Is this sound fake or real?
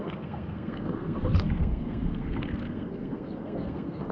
fake